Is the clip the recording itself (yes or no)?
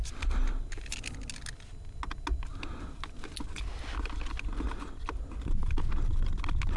yes